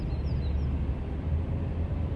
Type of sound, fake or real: real